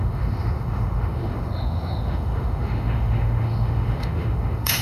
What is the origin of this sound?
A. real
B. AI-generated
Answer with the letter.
B